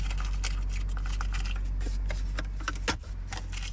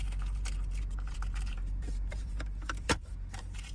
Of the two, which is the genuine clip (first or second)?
first